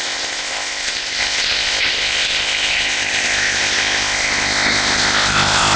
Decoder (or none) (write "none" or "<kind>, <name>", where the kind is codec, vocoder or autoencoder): codec, ZipCodec